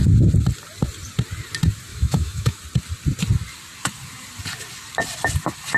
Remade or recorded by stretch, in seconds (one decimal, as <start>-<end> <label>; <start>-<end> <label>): 0.0-1.9 recorded; 1.9-2.6 remade; 2.6-5.8 recorded